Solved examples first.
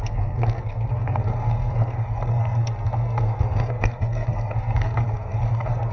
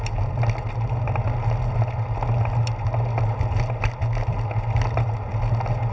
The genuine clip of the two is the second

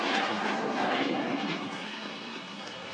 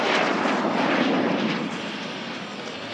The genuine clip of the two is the second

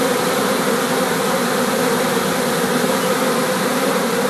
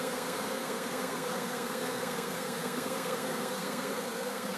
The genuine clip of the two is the first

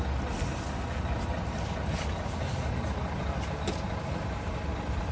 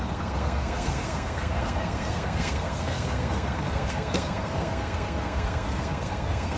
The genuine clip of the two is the first